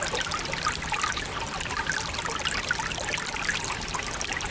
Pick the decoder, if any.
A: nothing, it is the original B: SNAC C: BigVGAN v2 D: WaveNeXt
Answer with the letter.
A